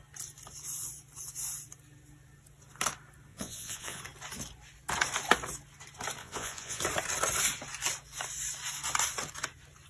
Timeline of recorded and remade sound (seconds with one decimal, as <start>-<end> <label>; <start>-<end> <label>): 0.0-3.3 recorded; 3.3-4.0 remade; 4.0-6.2 recorded; 6.2-6.8 remade; 6.8-9.9 recorded